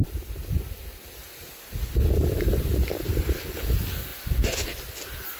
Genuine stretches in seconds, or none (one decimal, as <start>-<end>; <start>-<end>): 1.2-2.3